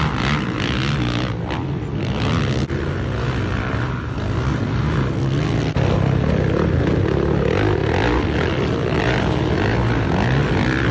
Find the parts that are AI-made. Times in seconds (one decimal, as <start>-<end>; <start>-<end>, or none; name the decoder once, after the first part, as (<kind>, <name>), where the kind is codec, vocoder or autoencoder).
none